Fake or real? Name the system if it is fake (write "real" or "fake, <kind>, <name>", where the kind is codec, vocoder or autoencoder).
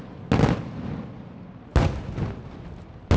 real